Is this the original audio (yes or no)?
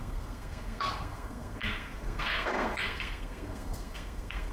no